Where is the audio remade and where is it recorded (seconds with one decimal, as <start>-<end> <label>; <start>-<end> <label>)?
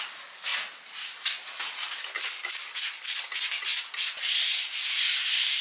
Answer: 0.0-5.6 recorded